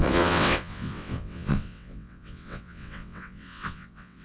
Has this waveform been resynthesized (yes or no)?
yes